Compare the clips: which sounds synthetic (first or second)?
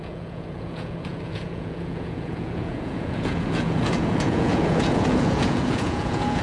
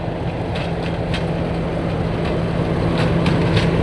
first